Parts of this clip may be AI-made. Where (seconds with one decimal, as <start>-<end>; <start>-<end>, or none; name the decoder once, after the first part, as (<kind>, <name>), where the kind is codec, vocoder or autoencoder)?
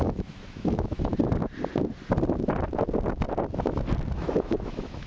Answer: 0.0-1.1 (autoencoder, DAC-VAE); 4.2-5.1